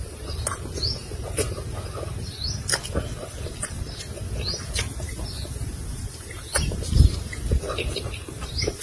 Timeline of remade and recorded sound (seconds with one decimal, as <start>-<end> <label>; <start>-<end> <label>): 0.0-2.7 remade; 2.7-4.0 recorded; 4.0-8.8 remade